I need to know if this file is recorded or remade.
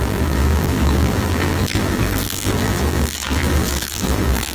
remade